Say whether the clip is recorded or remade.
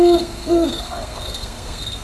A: remade